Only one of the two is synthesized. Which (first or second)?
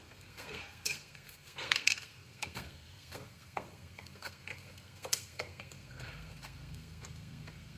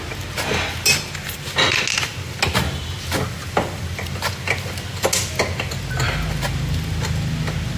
first